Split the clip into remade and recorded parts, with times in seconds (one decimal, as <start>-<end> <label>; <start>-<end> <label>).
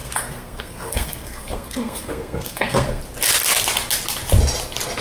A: 0.0-3.0 remade; 3.0-5.0 recorded